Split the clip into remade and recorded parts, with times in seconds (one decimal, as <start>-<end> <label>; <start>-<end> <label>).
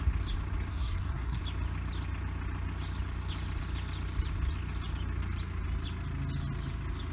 0.0-0.7 recorded; 0.7-1.4 remade; 1.4-7.1 recorded